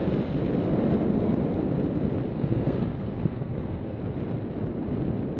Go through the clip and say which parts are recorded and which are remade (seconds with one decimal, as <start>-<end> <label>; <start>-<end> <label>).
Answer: 0.0-2.3 recorded; 2.3-4.0 remade; 4.0-5.4 recorded